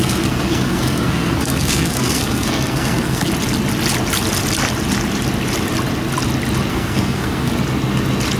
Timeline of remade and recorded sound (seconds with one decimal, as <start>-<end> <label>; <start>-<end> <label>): 0.0-3.3 remade; 3.3-6.7 recorded; 6.7-7.5 remade; 7.5-8.4 recorded